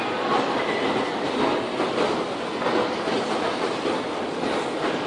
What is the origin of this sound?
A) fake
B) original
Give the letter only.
B